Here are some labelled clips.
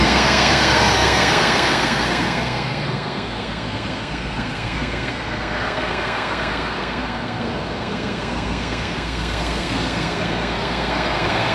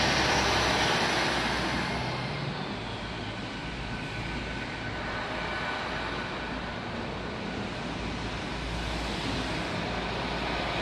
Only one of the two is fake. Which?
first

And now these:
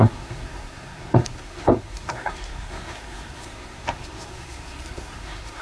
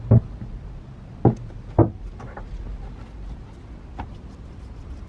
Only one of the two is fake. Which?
first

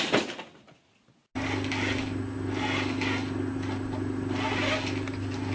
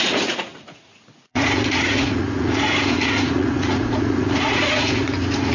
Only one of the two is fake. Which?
second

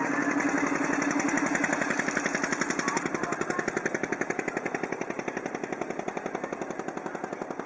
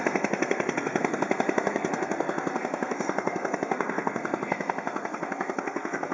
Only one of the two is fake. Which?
second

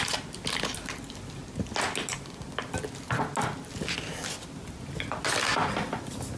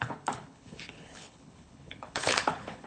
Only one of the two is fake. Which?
second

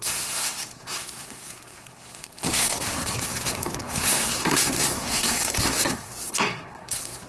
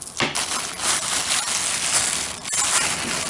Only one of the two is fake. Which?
first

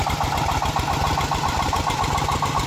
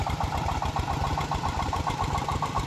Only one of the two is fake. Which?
second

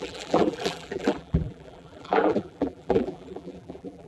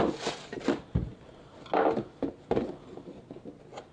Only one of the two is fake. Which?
first